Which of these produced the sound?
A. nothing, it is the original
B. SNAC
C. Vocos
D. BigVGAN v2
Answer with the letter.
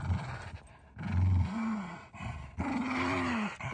A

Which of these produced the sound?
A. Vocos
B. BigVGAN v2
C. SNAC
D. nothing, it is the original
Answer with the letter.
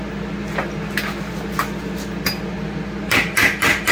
D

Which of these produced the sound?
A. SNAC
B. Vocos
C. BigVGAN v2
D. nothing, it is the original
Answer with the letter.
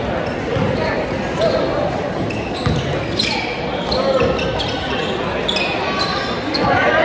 D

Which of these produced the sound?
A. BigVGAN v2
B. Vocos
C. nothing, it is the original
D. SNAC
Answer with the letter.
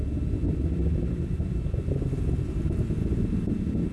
C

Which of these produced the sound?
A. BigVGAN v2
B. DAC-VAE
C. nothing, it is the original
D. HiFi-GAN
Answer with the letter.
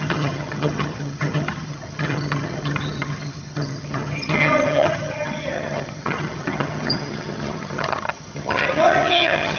D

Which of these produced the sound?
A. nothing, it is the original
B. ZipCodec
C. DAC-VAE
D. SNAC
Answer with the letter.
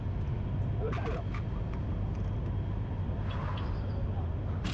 A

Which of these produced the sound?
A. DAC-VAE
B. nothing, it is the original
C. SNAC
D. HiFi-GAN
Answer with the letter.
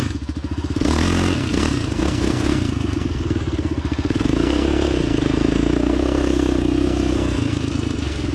C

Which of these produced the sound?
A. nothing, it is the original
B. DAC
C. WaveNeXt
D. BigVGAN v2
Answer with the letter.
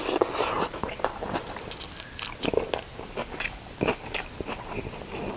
A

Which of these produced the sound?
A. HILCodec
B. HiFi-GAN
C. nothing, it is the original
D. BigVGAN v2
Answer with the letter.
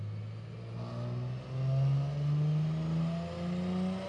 C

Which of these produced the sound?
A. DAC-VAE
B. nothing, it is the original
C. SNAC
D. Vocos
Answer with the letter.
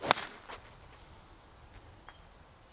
B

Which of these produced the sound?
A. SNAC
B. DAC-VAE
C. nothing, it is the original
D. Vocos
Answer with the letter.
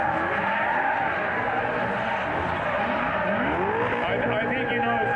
C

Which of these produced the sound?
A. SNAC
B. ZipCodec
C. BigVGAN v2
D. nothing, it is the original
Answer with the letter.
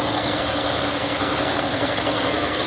A